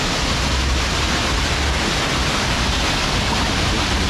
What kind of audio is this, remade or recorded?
recorded